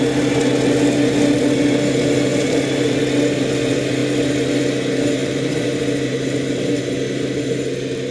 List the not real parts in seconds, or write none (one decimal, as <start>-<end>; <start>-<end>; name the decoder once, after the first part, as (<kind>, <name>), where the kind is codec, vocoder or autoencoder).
2.3-3.0 (vocoder, BigVGAN v2); 5.2-6.6